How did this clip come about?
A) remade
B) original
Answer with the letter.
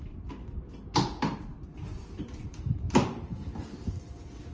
B